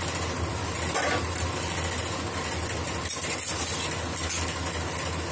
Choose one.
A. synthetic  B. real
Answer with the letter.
B